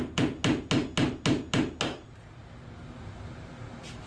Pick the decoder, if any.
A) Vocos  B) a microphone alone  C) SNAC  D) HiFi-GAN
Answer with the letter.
B